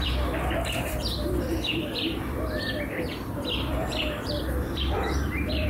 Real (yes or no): no